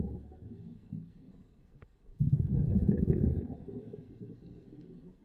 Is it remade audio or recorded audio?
remade